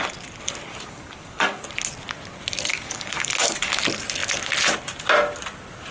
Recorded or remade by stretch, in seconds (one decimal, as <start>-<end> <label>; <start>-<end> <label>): 0.0-0.7 recorded; 0.7-1.7 remade; 1.7-2.7 recorded; 2.7-3.8 remade; 3.8-5.9 recorded